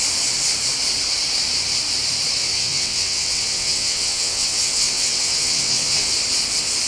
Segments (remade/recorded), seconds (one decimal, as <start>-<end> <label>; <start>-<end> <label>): 0.0-2.4 recorded; 2.4-6.1 remade; 6.1-6.9 recorded